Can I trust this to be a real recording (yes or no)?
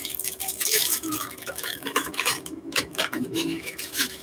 no